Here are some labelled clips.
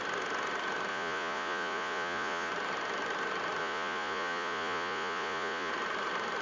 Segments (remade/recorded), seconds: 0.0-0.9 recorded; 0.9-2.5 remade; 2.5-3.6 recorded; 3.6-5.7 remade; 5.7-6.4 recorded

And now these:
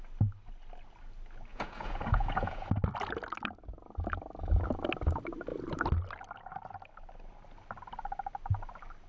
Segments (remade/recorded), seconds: 0.0-1.5 recorded; 1.5-2.7 remade; 2.7-9.1 recorded

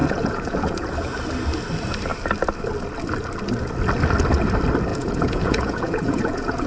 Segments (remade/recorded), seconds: 0.0-0.9 remade; 0.9-4.9 recorded; 4.9-6.7 remade

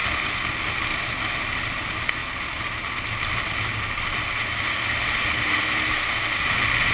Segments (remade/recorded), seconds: 0.0-6.9 recorded

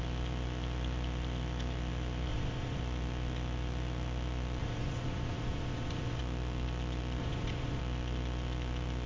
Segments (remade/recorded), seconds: 0.0-2.3 recorded; 2.3-2.8 remade; 2.8-4.6 recorded; 4.6-6.2 remade; 6.2-7.2 recorded; 7.2-7.8 remade; 7.8-9.1 recorded

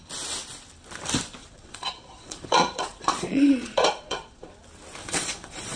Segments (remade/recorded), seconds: 0.0-1.4 recorded; 1.4-4.5 remade; 4.5-5.0 recorded; 5.0-5.8 remade

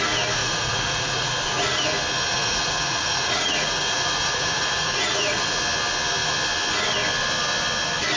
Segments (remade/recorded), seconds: 0.0-0.4 recorded; 0.4-1.3 remade; 1.3-2.3 recorded; 2.3-5.6 remade; 5.6-8.2 recorded